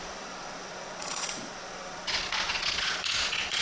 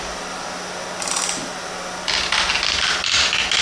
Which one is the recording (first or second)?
second